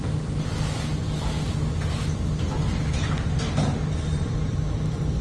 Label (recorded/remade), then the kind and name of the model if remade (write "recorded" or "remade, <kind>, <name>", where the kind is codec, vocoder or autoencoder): recorded